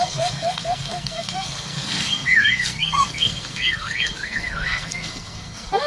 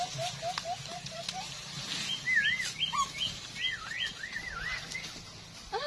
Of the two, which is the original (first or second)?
second